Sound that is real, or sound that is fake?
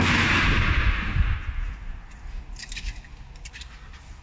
real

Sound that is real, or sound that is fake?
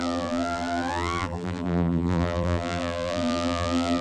fake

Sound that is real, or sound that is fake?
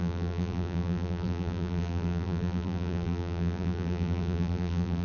fake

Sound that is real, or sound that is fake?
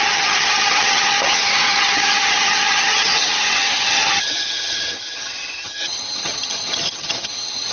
fake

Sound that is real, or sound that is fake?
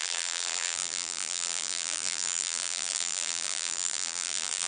fake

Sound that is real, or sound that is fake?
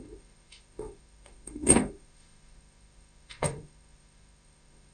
fake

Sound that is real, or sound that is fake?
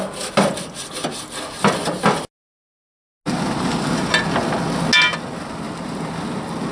real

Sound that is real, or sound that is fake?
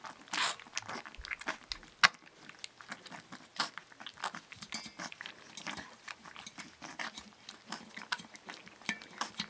real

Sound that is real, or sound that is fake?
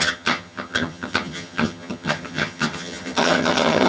fake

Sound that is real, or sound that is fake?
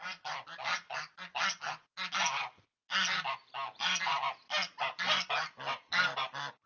real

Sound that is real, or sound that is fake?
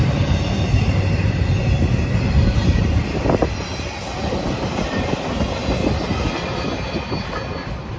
real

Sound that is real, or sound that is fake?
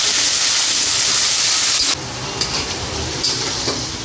real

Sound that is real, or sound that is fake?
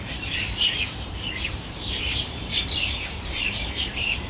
fake